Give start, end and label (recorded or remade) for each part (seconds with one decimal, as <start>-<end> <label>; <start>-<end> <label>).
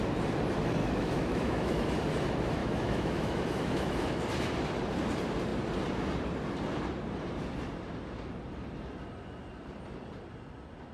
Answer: 0.0-0.8 recorded; 0.8-1.9 remade; 1.9-2.6 recorded; 2.6-4.2 remade; 4.2-10.9 recorded